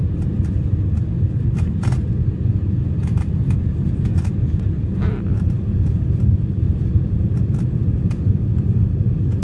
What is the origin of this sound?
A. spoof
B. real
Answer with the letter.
B